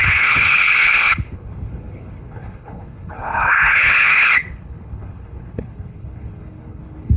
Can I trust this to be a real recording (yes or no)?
no